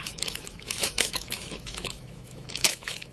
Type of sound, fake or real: fake